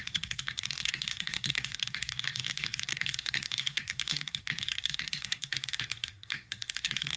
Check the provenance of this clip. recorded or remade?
remade